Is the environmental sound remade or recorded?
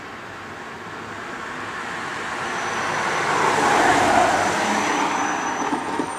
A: recorded